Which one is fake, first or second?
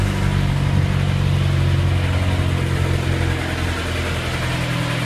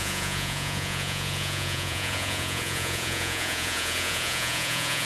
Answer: second